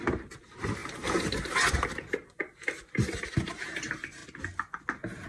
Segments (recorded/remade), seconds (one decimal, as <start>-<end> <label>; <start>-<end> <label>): 0.0-4.2 remade; 4.2-5.3 recorded